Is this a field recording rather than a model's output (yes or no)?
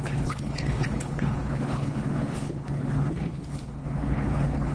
no